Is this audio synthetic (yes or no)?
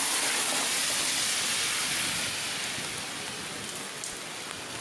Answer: no